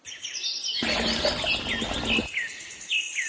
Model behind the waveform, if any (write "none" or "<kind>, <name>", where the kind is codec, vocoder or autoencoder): none